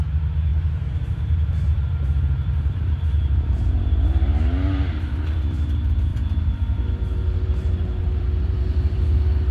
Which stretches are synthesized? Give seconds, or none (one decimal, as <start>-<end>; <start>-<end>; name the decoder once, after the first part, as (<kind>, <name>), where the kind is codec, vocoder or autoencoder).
0.5-4.4 (vocoder, BigVGAN v2); 6.1-9.0